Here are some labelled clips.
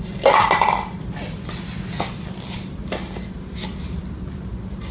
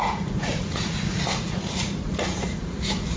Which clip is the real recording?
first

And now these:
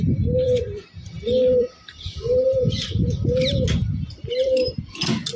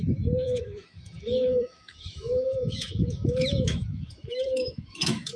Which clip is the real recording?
first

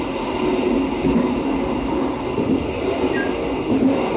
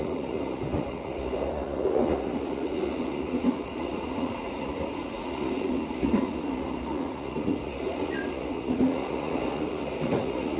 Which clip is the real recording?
first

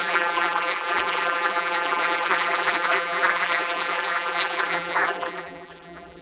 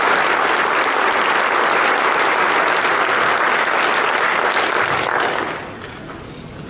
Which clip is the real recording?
second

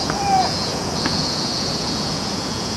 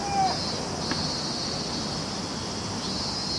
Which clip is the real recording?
second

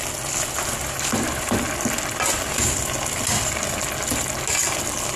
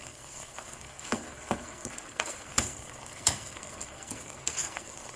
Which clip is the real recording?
first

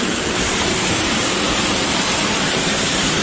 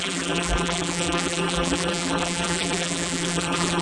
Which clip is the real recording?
first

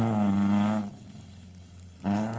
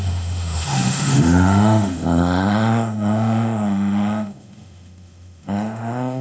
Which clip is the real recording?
first